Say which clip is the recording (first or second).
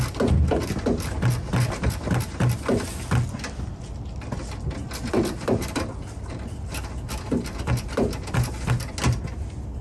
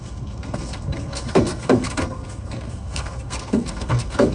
first